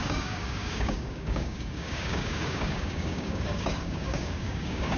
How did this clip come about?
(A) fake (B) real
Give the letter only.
A